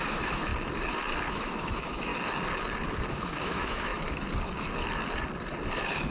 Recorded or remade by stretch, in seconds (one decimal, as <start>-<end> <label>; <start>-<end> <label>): 0.0-0.5 remade; 0.5-1.3 recorded; 1.3-2.1 remade; 2.1-3.1 recorded; 3.1-3.9 remade; 3.9-6.1 recorded